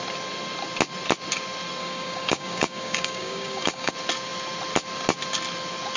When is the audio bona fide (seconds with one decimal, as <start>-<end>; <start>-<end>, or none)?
0.0-1.8; 3.9-6.0